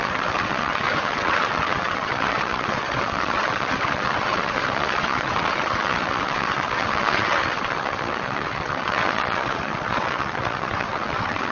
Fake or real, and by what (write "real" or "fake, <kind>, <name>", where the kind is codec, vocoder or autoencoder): fake, vocoder, WaveNeXt